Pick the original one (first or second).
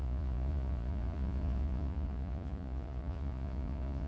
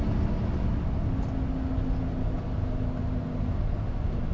second